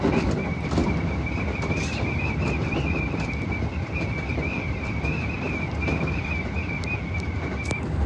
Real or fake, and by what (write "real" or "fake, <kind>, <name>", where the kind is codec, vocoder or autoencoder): fake, vocoder, BigVGAN v2